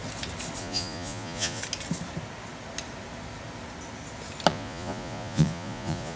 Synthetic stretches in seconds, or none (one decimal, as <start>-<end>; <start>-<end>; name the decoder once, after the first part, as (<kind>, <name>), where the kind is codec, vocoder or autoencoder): 0.6-1.6 (vocoder, Vocos); 4.5-6.2